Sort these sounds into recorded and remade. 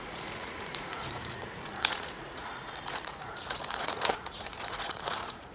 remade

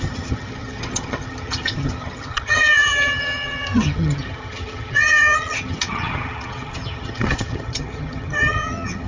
remade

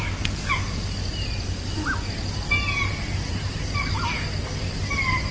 recorded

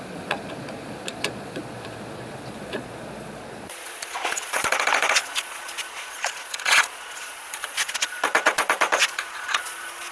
remade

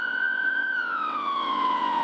remade